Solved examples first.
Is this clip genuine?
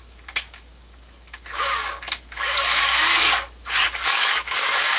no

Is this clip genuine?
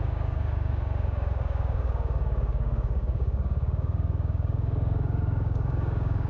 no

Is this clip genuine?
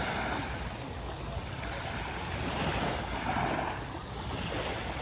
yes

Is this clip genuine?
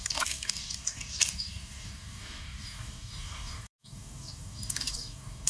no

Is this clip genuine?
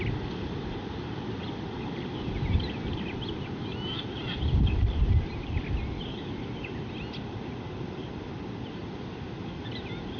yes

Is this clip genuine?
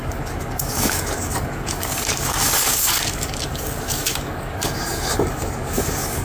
no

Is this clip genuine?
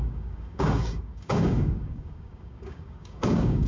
no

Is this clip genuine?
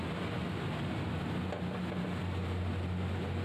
yes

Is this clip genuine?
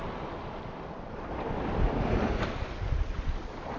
yes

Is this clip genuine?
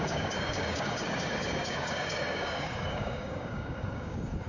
no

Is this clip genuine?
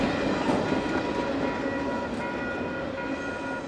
yes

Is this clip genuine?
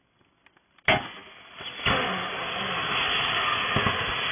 yes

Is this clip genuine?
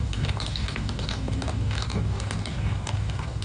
no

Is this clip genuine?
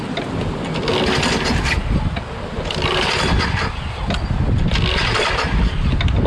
yes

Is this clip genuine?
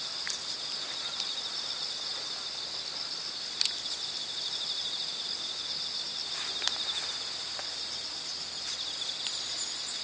yes